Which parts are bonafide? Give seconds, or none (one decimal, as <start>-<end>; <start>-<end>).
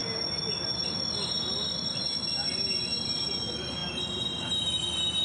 0.0-5.2